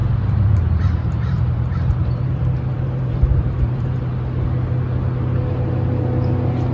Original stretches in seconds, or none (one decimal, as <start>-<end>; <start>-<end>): 4.0-6.7